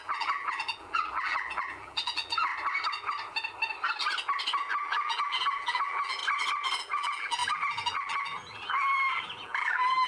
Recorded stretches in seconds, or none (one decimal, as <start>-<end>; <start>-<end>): 2.5-4.7; 6.2-6.8